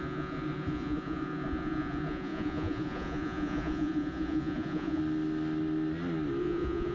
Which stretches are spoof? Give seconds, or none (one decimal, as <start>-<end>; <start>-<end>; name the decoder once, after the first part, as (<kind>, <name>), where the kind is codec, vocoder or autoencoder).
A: 0.0-5.0 (vocoder, Vocos); 6.4-6.9